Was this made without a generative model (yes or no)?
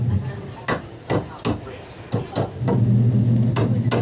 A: yes